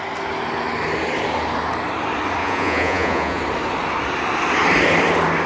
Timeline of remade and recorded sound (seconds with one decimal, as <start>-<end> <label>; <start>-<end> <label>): 0.0-2.4 recorded; 2.4-3.4 remade; 3.4-5.5 recorded